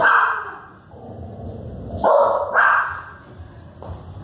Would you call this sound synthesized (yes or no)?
no